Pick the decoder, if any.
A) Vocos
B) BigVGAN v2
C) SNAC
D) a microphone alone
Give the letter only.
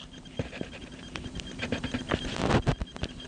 B